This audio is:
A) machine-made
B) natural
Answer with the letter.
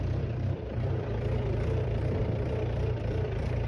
A